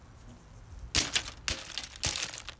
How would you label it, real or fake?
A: real